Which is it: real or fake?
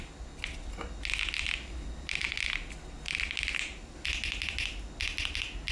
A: real